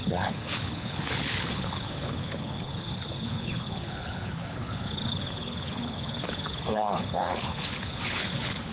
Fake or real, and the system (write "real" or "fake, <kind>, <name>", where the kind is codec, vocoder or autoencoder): fake, codec, HILCodec